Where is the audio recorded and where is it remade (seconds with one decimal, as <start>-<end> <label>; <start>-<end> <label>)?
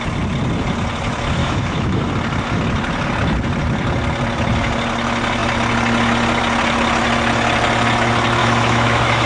0.0-1.4 recorded; 1.4-2.0 remade; 2.0-8.4 recorded; 8.4-9.3 remade